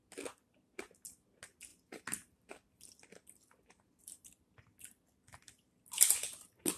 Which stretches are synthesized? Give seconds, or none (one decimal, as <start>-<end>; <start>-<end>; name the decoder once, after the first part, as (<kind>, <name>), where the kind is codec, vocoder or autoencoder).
none